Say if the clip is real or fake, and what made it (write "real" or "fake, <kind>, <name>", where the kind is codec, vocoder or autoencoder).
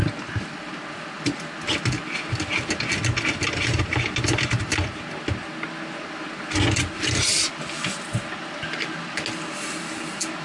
real